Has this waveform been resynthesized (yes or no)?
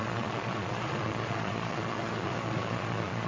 yes